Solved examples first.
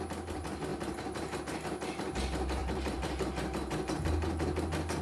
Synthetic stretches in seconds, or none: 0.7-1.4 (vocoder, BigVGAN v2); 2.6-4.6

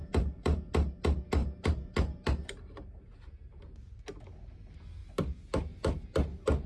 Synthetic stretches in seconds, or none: 0.0-0.7 (vocoder, BigVGAN v2); 1.4-3.9

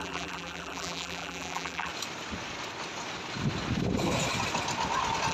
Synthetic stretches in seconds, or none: 0.0-1.9 (vocoder, BigVGAN v2)